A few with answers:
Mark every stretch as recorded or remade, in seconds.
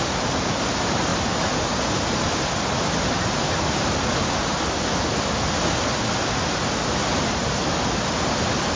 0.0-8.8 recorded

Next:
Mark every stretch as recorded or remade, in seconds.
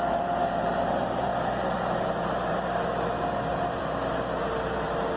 0.0-1.3 remade; 1.3-4.4 recorded; 4.4-5.2 remade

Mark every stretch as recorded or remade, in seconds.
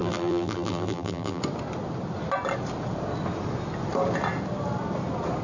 0.0-1.4 remade; 1.4-5.4 recorded